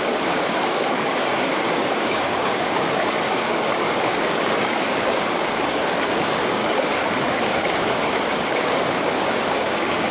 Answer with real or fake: fake